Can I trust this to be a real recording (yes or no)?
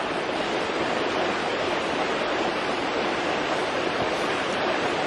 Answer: yes